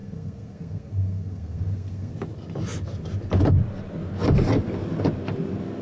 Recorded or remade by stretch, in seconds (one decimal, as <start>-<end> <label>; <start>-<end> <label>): 0.0-2.1 remade; 2.1-5.8 recorded